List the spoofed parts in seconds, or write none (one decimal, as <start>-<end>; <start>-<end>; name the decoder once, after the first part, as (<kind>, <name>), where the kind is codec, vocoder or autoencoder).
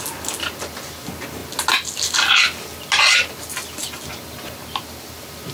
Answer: none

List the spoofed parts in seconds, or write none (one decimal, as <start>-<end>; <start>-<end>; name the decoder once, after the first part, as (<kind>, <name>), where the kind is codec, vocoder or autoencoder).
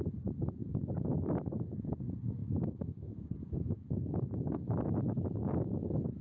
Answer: 2.4-6.2 (autoencoder, DAC-VAE)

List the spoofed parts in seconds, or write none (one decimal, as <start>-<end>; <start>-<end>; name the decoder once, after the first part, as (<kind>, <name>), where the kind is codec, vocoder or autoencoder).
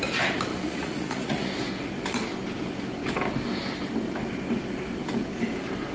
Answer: 0.5-1.5 (vocoder, Vocos)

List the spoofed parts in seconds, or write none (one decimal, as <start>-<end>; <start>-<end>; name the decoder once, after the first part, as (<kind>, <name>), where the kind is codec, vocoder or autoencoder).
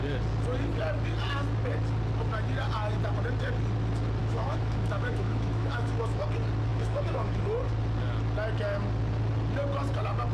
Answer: 4.2-6.2 (autoencoder, DAC-VAE); 6.7-7.4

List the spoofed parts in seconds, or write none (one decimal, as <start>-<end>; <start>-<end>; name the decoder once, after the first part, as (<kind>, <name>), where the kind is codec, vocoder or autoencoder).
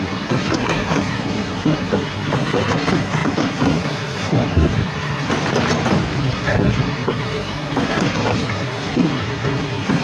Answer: 0.0-5.3 (codec, SNAC); 6.2-10.0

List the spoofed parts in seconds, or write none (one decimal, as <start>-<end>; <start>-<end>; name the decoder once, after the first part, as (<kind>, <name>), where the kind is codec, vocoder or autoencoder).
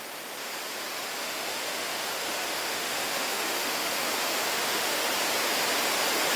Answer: 1.2-5.0 (autoencoder, DAC-VAE)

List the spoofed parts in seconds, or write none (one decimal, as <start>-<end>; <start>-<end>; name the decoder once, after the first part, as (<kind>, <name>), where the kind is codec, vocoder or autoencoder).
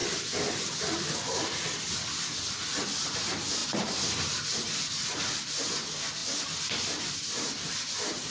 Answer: none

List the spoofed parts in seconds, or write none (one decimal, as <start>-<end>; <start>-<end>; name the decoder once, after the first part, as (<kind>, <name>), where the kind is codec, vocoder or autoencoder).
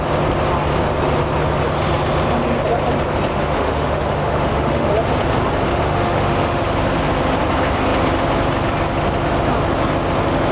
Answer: 3.3-4.9 (autoencoder, DAC-VAE); 5.7-6.6